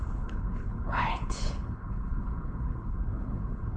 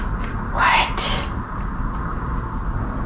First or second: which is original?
second